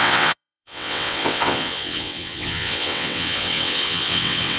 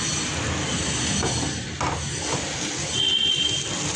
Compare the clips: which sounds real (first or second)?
second